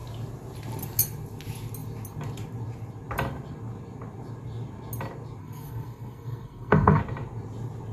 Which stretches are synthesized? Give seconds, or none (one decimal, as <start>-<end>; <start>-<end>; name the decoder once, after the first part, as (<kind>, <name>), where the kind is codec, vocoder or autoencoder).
5.4-7.0 (codec, SNAC)